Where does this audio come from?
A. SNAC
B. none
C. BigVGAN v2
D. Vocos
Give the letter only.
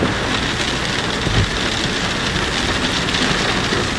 B